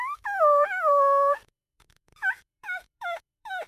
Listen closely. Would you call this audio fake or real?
fake